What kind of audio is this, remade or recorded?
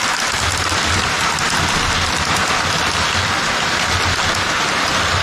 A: recorded